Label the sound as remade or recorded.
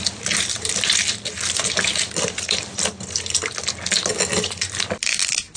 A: recorded